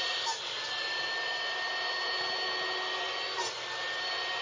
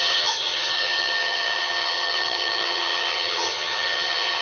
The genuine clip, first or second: first